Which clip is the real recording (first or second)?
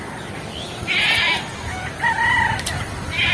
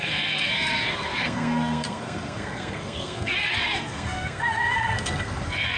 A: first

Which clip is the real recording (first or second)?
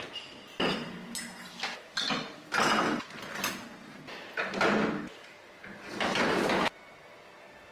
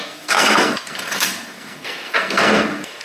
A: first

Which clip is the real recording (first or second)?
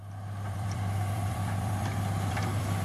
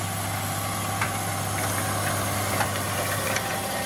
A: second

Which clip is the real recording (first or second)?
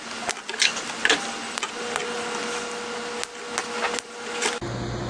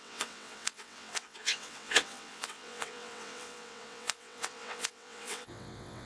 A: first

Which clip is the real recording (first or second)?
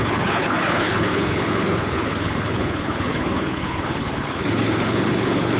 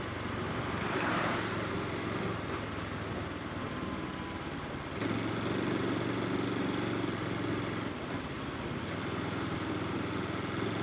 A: second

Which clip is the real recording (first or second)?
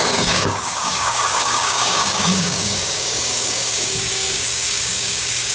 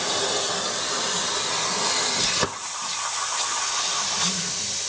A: second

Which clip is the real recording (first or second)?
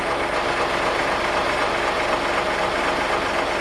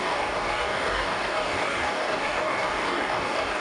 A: first